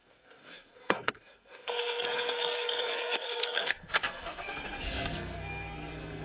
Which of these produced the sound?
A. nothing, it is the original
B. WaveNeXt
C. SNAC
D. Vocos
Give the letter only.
C